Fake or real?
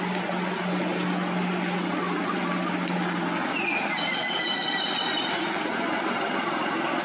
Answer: real